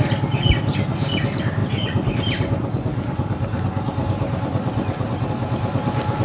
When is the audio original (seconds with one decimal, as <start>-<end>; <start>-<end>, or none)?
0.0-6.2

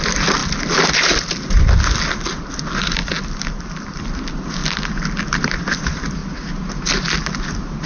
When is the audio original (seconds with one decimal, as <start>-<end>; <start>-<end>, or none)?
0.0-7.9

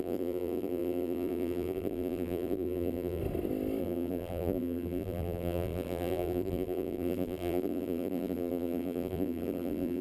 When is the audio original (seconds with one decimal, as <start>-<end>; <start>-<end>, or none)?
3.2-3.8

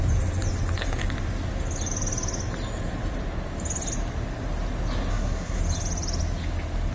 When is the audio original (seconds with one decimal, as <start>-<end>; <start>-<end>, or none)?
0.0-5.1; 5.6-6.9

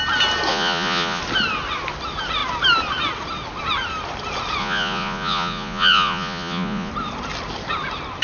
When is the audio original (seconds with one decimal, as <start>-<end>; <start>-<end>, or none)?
0.0-0.5; 1.2-4.6; 6.9-8.2

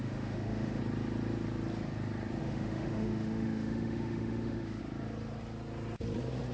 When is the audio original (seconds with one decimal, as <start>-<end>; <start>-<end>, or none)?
0.8-2.4; 4.8-6.5